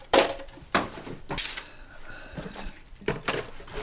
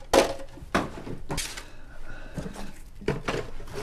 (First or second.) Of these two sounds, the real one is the second